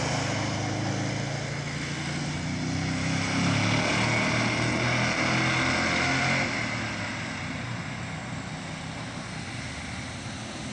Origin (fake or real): real